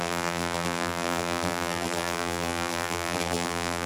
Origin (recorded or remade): remade